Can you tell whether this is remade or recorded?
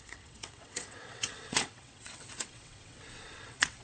remade